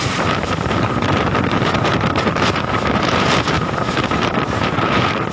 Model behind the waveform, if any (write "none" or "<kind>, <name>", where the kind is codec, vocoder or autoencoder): vocoder, BigVGAN v2